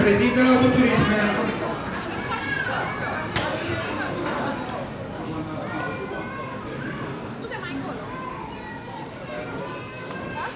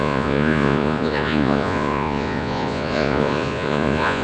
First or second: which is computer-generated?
second